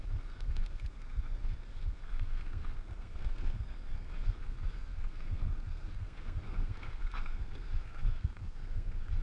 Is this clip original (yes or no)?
no